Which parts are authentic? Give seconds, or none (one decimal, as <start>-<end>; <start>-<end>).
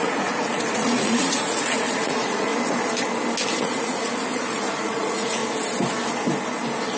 2.5-3.6; 5.4-7.0